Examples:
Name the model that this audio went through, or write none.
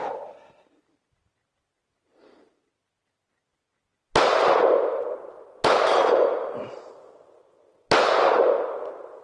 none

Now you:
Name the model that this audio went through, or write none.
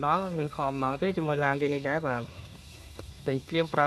codec, SNAC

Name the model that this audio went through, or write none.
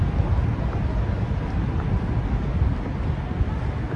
none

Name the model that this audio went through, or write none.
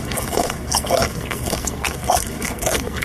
codec, SNAC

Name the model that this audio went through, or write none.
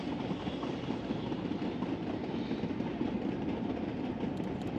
none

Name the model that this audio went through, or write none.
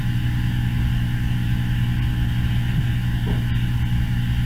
none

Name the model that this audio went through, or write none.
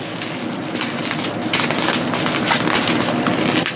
none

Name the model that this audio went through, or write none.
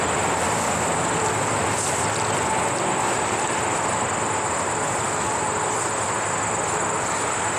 none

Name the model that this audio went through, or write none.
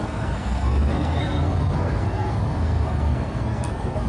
codec, SNAC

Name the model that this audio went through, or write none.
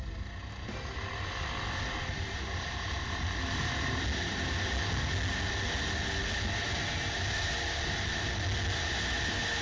none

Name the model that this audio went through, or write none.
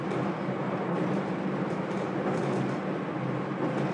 none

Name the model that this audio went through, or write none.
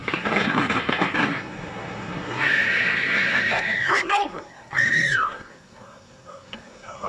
codec, SNAC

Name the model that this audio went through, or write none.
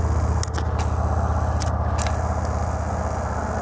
none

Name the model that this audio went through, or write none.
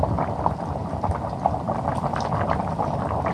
none